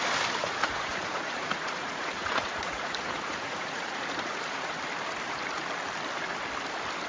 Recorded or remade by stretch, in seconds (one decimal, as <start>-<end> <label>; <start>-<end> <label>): 0.0-0.4 recorded; 0.4-4.7 remade; 4.7-7.1 recorded

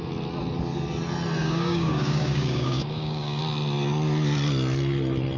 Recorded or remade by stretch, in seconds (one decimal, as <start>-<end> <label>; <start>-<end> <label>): 0.0-1.4 recorded; 1.4-3.4 remade; 3.4-5.4 recorded

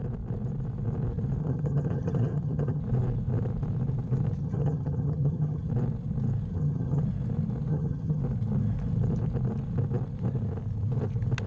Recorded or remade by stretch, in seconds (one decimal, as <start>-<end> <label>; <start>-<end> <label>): 0.0-1.4 recorded; 1.4-2.8 remade; 2.8-4.4 recorded; 4.4-5.7 remade; 5.7-6.5 recorded; 6.5-7.0 remade; 7.0-7.7 recorded; 7.7-8.2 remade; 8.2-11.5 recorded

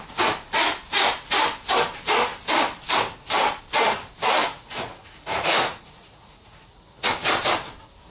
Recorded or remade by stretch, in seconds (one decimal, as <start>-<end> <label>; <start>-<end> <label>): 0.0-4.4 recorded; 4.4-7.1 remade; 7.1-8.1 recorded

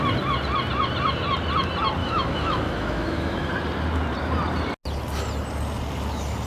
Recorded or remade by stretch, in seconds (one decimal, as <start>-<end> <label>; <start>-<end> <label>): 0.0-2.0 recorded; 2.0-3.5 remade; 3.5-6.5 recorded

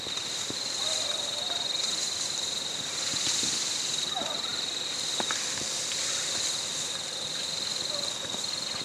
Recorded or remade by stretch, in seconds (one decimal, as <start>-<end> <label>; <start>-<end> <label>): 0.0-8.8 recorded